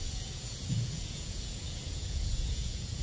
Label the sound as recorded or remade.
remade